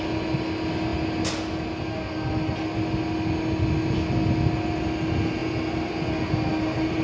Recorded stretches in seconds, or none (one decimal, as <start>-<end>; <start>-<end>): 0.0-7.0